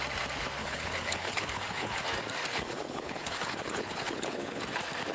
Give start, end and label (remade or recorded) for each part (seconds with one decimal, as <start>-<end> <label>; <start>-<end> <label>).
0.0-0.6 recorded; 0.6-2.0 remade; 2.0-2.5 recorded; 2.5-4.6 remade; 4.6-5.1 recorded